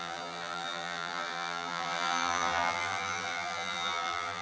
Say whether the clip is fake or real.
fake